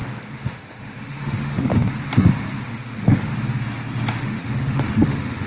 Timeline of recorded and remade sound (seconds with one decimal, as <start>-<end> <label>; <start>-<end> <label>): 0.0-1.7 remade; 1.7-2.6 recorded; 2.6-3.3 remade; 3.3-4.2 recorded; 4.2-5.5 remade